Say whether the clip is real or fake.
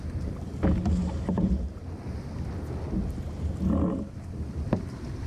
real